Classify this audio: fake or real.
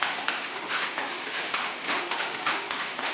fake